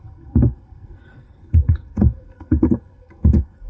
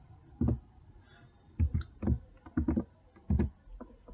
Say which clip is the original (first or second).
second